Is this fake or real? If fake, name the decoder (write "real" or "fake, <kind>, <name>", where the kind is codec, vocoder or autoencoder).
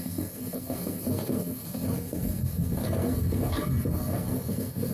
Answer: fake, codec, SNAC